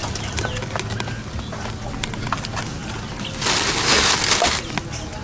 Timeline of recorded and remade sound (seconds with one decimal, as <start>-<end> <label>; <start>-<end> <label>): 0.0-5.2 recorded